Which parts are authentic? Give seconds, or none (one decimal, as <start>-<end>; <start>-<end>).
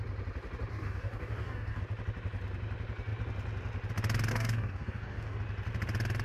0.0-0.7; 1.8-4.3; 5.4-6.2